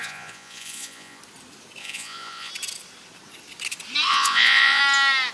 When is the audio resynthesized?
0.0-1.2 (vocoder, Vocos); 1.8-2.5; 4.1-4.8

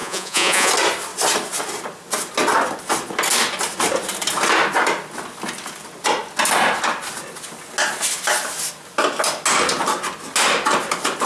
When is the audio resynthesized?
0.0-0.7 (vocoder, Vocos)

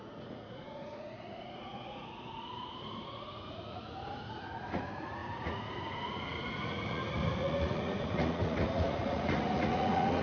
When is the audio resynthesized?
0.0-10.2 (vocoder, Vocos)